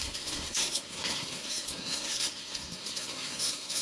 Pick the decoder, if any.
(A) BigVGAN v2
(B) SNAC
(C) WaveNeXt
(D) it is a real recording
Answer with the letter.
B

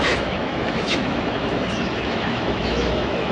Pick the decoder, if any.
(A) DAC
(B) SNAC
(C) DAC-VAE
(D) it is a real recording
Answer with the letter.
C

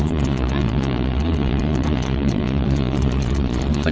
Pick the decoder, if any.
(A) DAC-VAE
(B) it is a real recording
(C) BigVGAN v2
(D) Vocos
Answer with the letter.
D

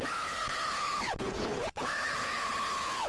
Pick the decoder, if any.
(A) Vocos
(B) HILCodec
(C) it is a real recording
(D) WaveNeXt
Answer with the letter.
B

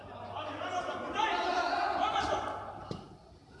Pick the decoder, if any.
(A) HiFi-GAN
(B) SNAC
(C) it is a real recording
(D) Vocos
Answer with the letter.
C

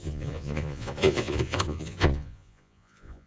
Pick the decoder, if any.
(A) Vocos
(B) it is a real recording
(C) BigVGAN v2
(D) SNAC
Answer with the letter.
A